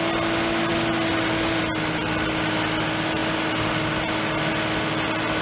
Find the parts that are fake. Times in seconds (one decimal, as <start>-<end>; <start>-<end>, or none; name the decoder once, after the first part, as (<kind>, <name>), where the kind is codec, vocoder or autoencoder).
none